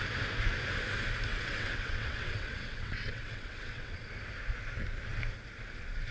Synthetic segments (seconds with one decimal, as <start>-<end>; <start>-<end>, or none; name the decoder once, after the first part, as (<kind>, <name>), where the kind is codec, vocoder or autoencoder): 1.3-4.0 (vocoder, WaveNeXt)